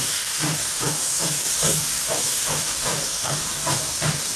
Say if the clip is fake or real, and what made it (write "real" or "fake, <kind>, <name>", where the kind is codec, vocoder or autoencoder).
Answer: fake, codec, DAC